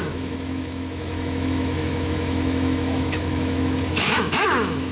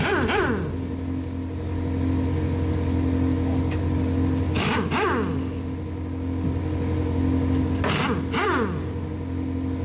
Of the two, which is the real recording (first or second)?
second